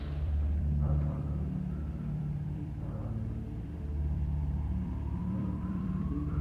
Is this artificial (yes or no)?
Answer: yes